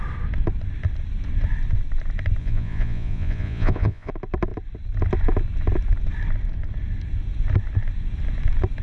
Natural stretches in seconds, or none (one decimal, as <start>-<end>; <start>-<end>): 0.0-2.4; 4.1-8.8